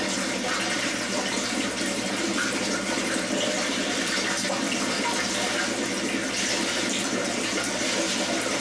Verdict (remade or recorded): recorded